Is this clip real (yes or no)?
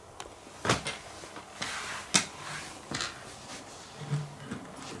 yes